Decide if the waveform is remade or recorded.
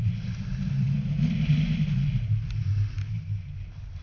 recorded